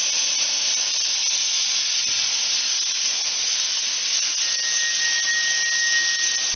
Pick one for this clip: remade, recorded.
recorded